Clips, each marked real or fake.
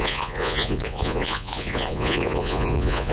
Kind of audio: fake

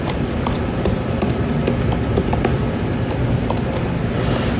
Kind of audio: real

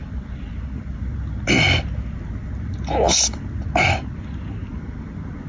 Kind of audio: real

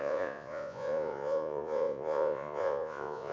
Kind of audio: fake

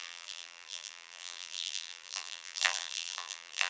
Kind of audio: fake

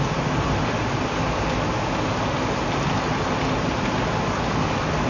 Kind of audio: real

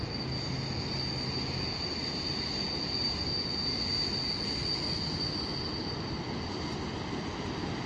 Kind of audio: real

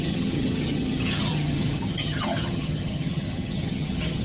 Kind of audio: fake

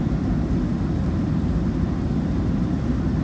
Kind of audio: real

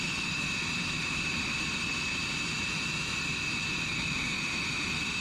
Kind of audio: real